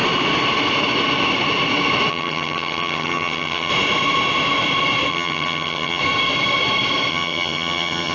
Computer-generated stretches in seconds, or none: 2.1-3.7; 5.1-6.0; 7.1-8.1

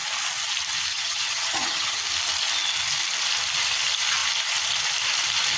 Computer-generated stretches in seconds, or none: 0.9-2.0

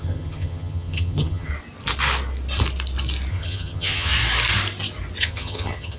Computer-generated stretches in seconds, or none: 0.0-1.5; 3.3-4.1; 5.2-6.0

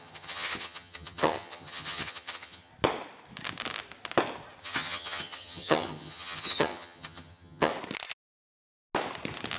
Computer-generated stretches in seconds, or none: 0.0-2.7; 4.6-7.7